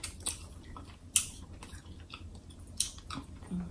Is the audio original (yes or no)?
yes